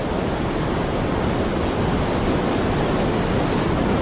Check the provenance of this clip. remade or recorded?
recorded